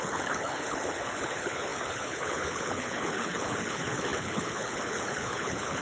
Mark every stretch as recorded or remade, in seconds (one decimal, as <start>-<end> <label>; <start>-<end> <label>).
0.0-5.8 remade